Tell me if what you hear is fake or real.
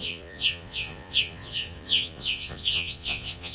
fake